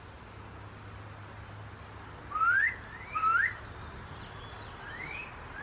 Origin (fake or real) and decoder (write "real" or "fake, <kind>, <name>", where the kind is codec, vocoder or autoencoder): real